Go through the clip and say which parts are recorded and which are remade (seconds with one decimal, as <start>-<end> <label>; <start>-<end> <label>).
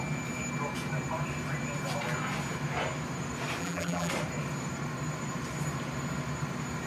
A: 0.0-3.6 recorded; 3.6-4.1 remade; 4.1-6.9 recorded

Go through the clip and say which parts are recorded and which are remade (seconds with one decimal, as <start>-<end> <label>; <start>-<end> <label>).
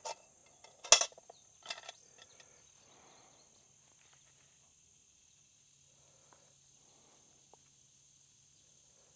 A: 0.0-9.2 recorded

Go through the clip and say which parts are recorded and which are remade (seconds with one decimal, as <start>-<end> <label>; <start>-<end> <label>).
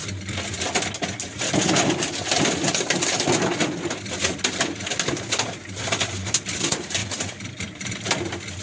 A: 0.0-7.0 recorded; 7.0-8.1 remade; 8.1-8.6 recorded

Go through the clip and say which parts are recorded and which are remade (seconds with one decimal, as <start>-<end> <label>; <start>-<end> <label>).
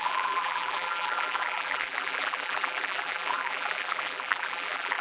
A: 0.0-5.0 remade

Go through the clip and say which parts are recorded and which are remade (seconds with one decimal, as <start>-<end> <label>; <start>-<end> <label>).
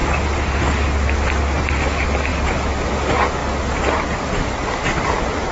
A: 0.0-1.6 recorded; 1.6-2.3 remade; 2.3-2.9 recorded; 2.9-5.5 remade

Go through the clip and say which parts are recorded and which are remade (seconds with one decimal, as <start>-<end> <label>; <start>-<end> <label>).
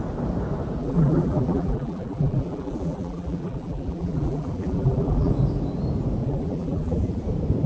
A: 0.0-0.8 recorded; 0.8-5.3 remade; 5.3-6.2 recorded; 6.2-7.2 remade; 7.2-7.7 recorded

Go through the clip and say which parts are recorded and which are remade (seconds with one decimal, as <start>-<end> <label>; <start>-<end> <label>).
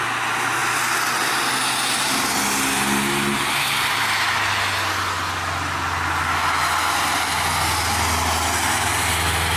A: 0.0-9.6 recorded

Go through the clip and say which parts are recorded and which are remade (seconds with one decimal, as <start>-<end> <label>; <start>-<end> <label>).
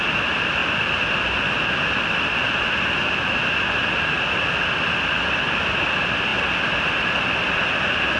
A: 0.0-8.2 recorded